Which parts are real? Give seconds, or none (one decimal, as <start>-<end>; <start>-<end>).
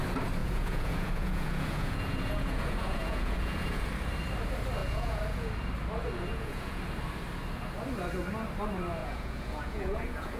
0.0-0.4; 3.9-4.8; 5.5-6.3; 6.8-9.0